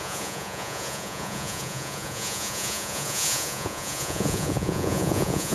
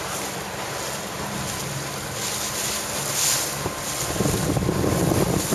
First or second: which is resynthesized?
first